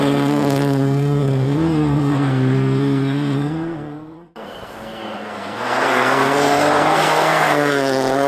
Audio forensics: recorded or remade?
remade